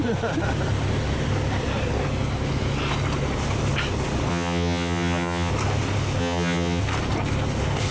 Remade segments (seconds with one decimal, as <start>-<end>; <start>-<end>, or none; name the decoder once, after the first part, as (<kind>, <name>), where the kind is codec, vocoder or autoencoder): 4.3-5.5 (vocoder, HiFi-GAN); 6.2-6.8